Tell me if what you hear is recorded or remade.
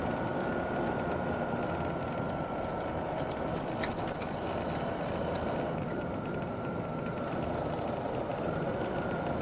remade